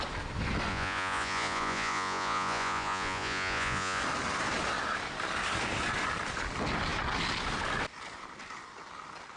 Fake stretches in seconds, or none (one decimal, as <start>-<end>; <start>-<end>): 0.7-4.0